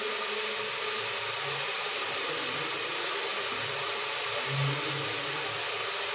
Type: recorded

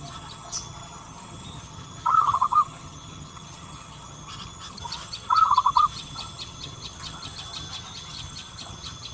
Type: remade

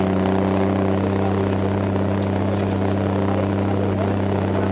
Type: recorded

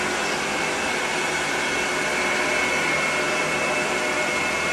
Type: recorded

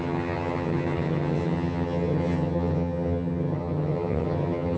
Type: remade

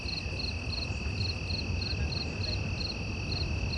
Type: recorded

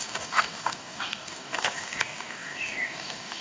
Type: remade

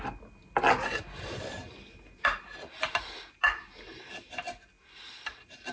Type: recorded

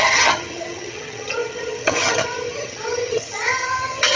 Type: remade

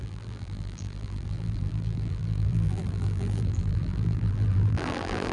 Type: remade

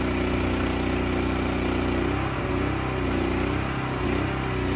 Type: recorded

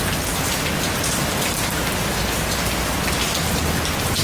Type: recorded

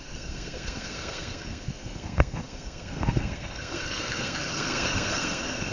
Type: remade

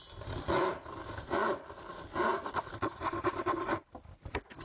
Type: recorded